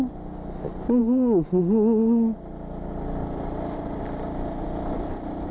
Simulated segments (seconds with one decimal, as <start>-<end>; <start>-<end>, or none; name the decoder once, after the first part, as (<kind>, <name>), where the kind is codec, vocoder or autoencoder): 1.0-1.6 (vocoder, Vocos)